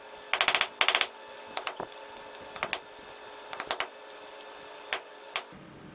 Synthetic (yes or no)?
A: no